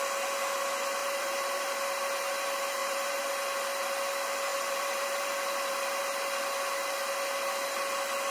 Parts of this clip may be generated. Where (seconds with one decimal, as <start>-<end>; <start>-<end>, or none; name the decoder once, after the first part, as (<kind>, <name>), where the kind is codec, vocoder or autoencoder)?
1.0-1.6 (vocoder, BigVGAN v2); 2.8-3.3; 4.5-6.0